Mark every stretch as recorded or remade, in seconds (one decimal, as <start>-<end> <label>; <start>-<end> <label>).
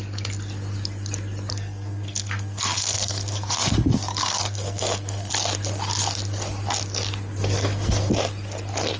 0.0-1.5 recorded; 1.5-5.3 remade; 5.3-7.4 recorded; 7.4-8.1 remade; 8.1-9.0 recorded